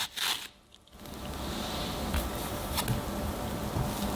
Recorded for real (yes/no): yes